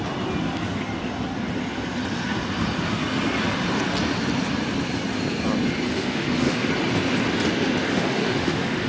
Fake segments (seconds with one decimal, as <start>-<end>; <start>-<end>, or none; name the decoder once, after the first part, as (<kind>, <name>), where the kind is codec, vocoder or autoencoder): 5.9-6.7 (autoencoder, DAC-VAE); 7.9-8.9